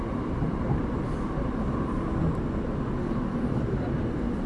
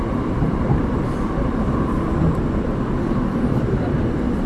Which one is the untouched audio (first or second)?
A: first